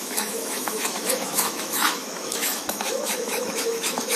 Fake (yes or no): yes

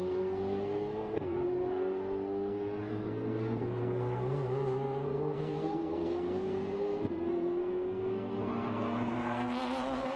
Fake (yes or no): yes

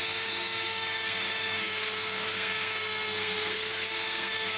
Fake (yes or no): yes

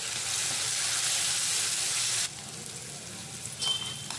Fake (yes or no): no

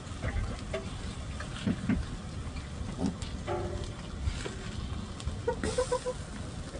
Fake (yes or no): no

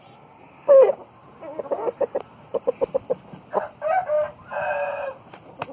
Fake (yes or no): no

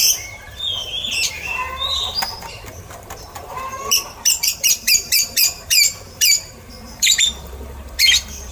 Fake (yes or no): yes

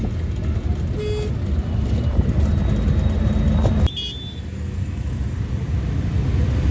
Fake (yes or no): no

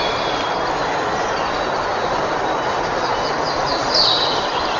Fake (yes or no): no